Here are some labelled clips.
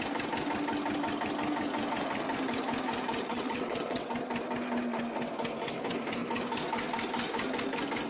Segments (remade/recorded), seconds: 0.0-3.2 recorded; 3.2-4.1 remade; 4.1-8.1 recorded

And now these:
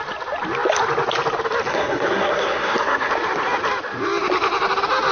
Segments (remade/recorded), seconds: 0.0-1.7 recorded; 1.7-3.1 remade; 3.1-5.1 recorded

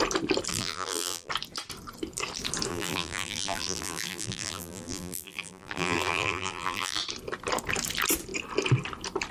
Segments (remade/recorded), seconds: 0.0-0.5 recorded; 0.5-1.3 remade; 1.3-2.7 recorded; 2.7-7.0 remade; 7.0-9.3 recorded